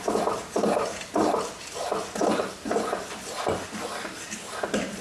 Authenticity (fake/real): real